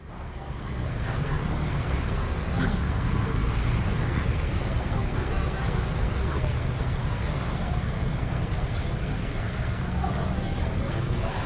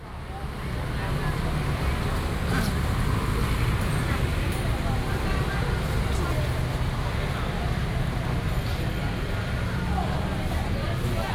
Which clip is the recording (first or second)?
second